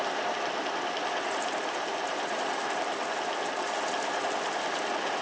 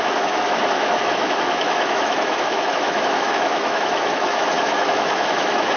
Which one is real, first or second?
first